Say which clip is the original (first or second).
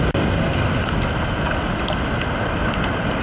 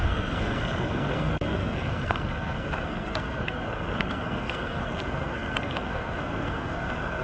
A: first